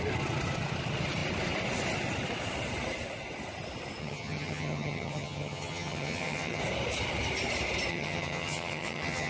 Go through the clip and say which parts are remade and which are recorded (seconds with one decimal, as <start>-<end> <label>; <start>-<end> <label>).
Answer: 0.0-4.0 recorded; 4.0-6.6 remade; 6.6-7.9 recorded; 7.9-9.3 remade